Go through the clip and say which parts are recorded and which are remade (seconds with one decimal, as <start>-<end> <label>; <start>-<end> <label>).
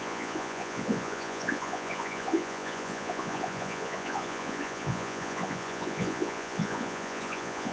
0.0-7.7 remade